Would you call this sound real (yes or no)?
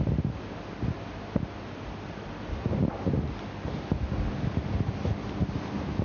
yes